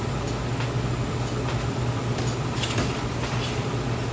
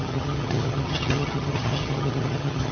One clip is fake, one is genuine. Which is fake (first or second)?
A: second